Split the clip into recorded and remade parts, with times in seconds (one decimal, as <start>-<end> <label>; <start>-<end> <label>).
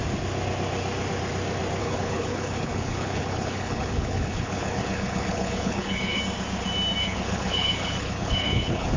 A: 0.0-1.8 recorded; 1.8-6.2 remade; 6.2-7.0 recorded; 7.0-9.0 remade